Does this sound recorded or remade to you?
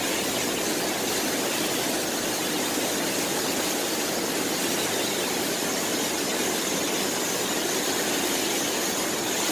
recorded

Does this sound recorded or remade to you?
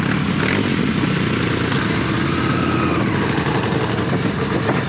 recorded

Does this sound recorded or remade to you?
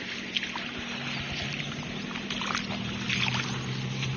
recorded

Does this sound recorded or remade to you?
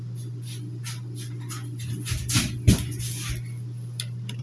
recorded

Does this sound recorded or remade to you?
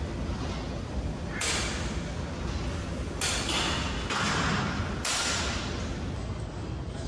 recorded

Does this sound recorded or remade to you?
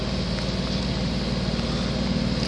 recorded